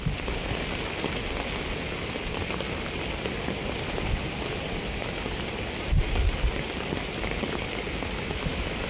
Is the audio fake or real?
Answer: real